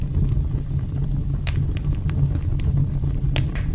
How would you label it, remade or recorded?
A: recorded